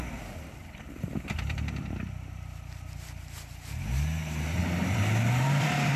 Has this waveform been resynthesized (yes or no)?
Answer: yes